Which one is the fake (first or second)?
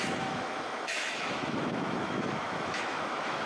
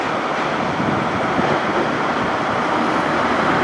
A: first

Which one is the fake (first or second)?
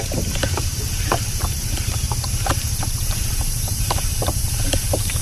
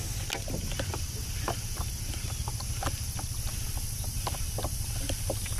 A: first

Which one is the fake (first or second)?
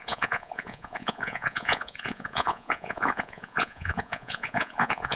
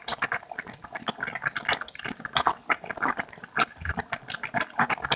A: first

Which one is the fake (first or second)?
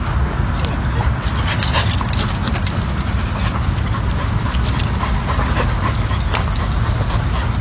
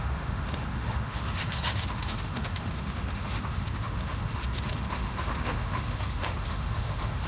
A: second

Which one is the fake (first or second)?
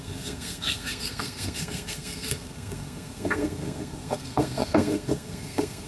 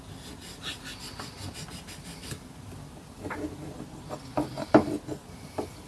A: first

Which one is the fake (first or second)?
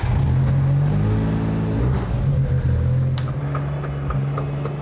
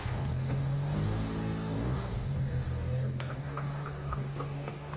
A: second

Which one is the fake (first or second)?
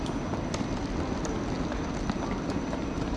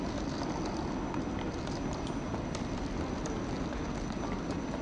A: first